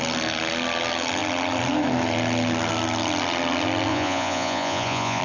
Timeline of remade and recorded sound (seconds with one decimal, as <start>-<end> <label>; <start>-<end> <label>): 0.0-3.9 recorded; 3.9-5.2 remade

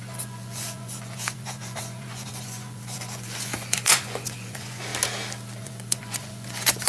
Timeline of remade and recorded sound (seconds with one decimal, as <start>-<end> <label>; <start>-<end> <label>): 0.0-4.9 remade; 4.9-5.6 recorded; 5.6-6.9 remade

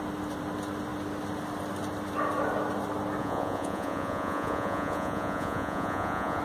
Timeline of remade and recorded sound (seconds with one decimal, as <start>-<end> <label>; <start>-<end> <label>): 0.0-3.2 recorded; 3.2-6.4 remade

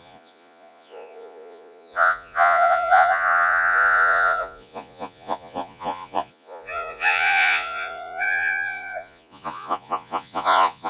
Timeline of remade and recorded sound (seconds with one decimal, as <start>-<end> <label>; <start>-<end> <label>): 0.0-10.9 remade

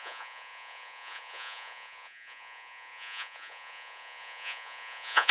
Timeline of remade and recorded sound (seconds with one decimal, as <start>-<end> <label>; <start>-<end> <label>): 0.0-5.3 remade